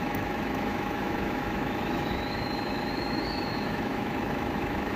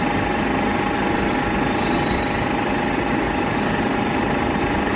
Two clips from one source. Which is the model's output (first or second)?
first